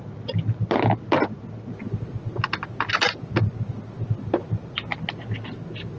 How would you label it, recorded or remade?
recorded